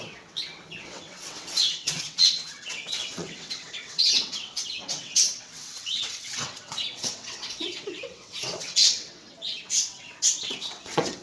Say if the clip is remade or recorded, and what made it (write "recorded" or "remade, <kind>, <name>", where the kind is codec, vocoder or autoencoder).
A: remade, vocoder, WaveNeXt